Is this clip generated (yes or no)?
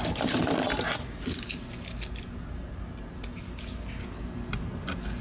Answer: no